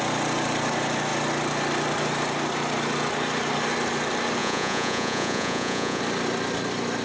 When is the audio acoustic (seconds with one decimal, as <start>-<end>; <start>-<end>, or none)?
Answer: 0.0-4.4; 6.0-7.0